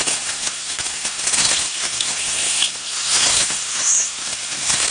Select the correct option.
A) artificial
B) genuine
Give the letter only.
A